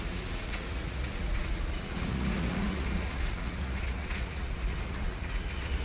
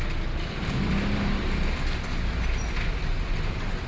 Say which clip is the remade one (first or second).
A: first